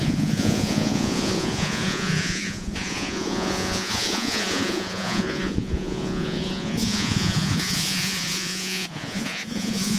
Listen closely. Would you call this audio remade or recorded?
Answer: remade